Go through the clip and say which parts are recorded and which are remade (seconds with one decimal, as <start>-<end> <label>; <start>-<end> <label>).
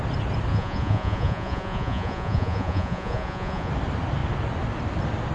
0.0-0.5 recorded; 0.5-3.7 remade; 3.7-5.3 recorded